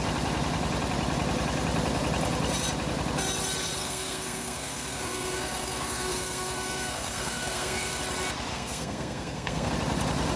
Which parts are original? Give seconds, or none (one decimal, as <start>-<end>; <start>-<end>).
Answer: 0.0-3.8; 8.0-8.5; 9.7-10.4